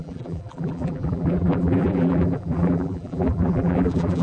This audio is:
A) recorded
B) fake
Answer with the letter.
B